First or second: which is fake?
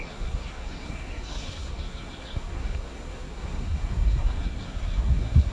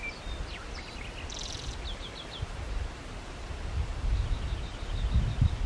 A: first